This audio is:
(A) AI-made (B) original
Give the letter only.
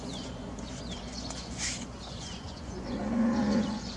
A